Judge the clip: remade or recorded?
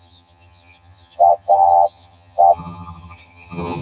remade